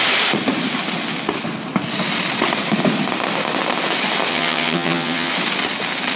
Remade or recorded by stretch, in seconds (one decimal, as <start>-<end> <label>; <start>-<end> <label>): 0.0-4.3 recorded; 4.3-5.3 remade; 5.3-6.2 recorded